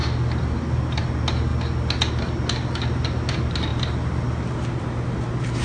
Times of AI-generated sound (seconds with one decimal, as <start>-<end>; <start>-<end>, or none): none